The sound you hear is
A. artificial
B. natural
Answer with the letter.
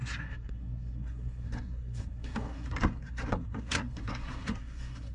A